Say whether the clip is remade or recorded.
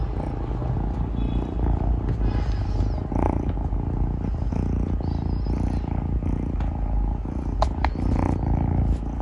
recorded